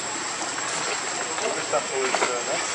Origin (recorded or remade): recorded